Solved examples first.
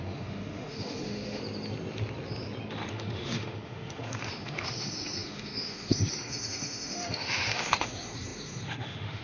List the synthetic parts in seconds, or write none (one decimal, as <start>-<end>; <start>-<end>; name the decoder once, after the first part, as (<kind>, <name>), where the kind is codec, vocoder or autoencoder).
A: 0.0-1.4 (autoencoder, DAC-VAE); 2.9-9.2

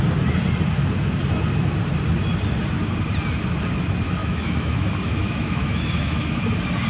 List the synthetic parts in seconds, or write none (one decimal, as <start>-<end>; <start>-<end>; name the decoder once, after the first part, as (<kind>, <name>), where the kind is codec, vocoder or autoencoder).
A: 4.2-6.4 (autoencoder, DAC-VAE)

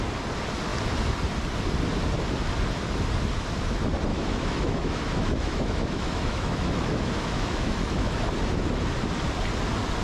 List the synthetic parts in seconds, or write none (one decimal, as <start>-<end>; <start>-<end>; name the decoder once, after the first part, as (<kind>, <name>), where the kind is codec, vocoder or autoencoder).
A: 4.1-8.2 (autoencoder, DAC-VAE)

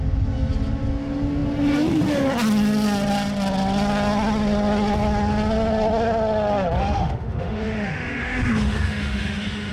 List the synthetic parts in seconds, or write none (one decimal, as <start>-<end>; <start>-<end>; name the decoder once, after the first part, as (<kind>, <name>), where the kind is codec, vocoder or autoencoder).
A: 6.8-9.7 (autoencoder, DAC-VAE)

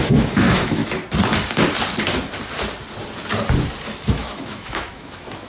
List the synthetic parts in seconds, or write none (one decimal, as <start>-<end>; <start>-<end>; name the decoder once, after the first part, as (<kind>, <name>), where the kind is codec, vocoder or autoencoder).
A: 0.0-0.8 (autoencoder, DAC-VAE); 4.1-5.5

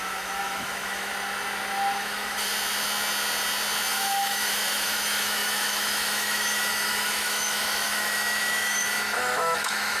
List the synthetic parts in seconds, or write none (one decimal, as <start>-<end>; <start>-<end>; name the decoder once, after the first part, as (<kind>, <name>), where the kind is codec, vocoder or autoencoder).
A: 0.0-1.1 (autoencoder, DAC-VAE); 2.0-2.5; 3.9-10.0

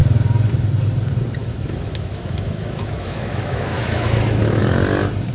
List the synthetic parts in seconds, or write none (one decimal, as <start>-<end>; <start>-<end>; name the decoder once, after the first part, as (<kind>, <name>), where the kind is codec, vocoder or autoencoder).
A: 1.4-4.6 (autoencoder, DAC-VAE)

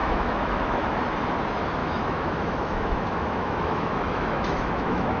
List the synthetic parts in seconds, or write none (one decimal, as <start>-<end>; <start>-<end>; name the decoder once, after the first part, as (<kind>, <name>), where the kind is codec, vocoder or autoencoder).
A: 0.0-1.0 (autoencoder, DAC-VAE); 1.8-5.2